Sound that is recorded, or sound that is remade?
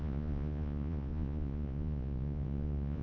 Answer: remade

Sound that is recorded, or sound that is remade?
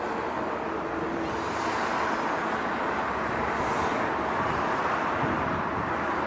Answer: recorded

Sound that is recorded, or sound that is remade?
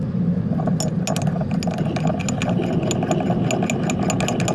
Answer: recorded